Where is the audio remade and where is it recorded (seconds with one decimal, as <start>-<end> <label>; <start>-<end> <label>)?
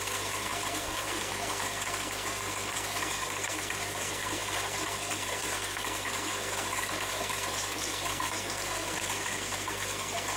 0.0-10.4 remade